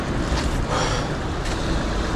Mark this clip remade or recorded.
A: recorded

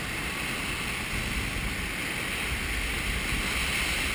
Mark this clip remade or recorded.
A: recorded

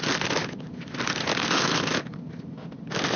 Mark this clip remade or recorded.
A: recorded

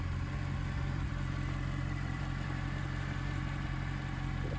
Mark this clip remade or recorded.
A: remade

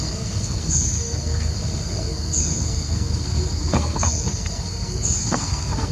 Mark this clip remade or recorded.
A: remade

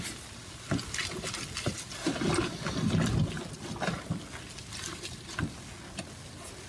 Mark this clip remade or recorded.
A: recorded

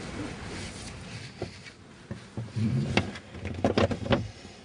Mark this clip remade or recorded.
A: recorded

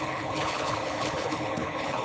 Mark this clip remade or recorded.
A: remade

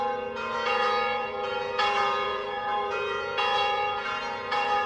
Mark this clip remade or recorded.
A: remade